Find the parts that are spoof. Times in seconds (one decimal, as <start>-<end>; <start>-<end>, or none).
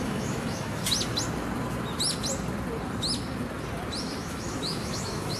0.0-0.8; 4.0-5.4